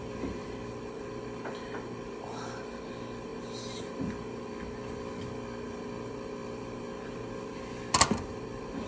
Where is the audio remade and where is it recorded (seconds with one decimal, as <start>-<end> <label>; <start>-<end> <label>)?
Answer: 0.0-8.9 recorded